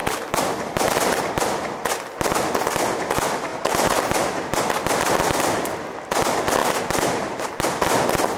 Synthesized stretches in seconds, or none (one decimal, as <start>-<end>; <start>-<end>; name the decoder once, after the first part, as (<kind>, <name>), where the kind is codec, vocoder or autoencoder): 3.5-4.6 (vocoder, BigVGAN v2); 6.6-7.4